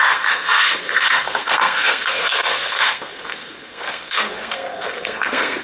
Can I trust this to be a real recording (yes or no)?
no